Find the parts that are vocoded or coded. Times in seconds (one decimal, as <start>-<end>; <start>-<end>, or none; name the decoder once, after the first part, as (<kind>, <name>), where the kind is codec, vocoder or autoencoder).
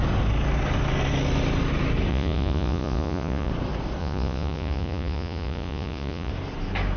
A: 2.1-3.5 (vocoder, Vocos); 4.0-6.3